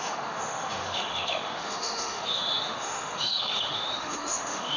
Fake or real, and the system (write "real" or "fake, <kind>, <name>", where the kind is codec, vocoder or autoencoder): fake, autoencoder, DAC-VAE